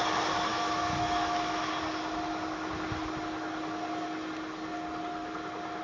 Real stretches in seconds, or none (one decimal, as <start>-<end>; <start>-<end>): 0.0-0.5; 1.7-5.8